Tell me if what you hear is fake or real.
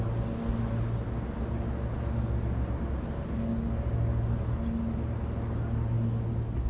real